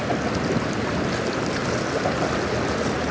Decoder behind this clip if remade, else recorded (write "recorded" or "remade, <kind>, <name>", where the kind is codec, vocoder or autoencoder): recorded